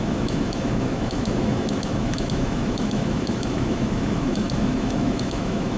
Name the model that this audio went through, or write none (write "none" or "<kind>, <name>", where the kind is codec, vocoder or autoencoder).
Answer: autoencoder, DAC-VAE